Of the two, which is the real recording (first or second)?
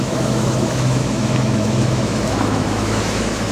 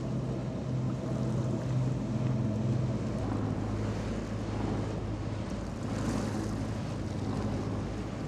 second